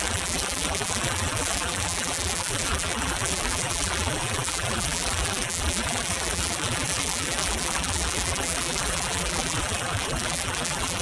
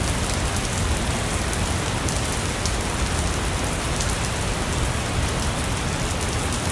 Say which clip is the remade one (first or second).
first